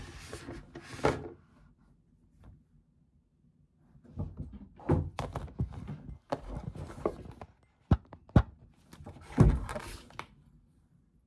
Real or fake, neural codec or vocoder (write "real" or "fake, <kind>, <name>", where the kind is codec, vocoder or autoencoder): real